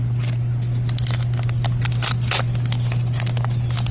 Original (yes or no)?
yes